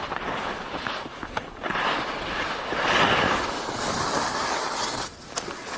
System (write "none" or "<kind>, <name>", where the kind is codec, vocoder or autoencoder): none